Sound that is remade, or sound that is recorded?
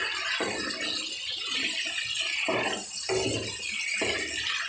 recorded